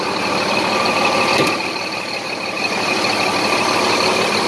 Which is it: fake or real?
real